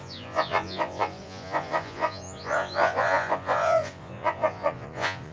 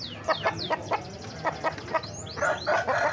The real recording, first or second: second